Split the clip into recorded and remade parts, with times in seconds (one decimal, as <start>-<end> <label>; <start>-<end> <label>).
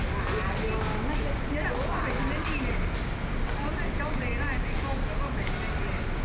0.0-6.2 recorded